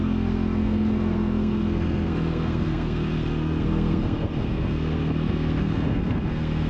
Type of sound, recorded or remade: remade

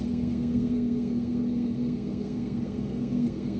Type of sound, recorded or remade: remade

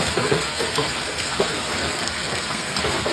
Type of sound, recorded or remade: remade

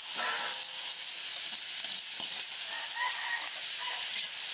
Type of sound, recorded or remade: recorded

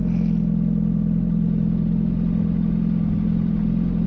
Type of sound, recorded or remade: recorded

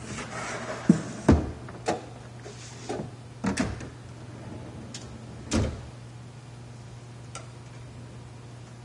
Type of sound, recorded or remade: recorded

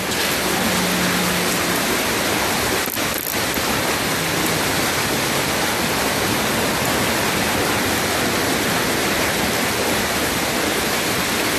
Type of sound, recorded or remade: recorded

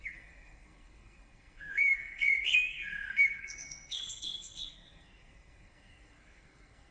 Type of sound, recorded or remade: remade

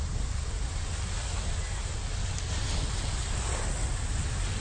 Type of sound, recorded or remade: recorded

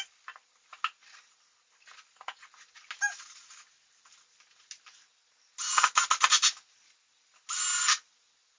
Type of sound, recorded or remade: recorded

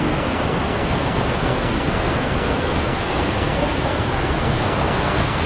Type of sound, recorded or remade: remade